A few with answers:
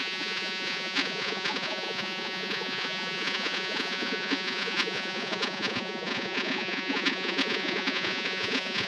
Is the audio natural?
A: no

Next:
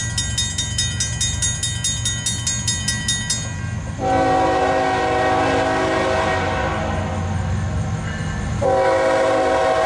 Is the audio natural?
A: yes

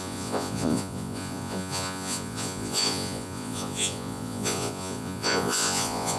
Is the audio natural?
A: no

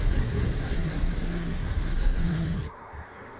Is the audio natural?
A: no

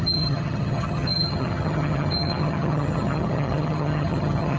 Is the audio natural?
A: no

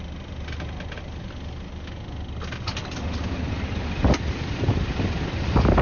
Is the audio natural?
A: yes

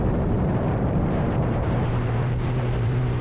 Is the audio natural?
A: no